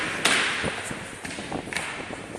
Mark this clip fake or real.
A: real